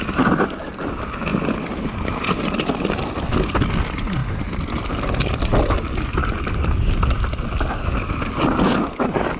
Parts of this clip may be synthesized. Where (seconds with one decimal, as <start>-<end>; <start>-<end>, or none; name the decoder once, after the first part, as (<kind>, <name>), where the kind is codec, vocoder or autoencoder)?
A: 1.3-3.2 (vocoder, BigVGAN v2)